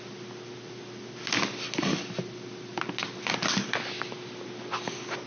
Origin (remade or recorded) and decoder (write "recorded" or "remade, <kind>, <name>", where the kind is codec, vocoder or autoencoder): recorded